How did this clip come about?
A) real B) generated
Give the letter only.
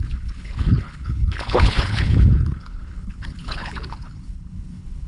B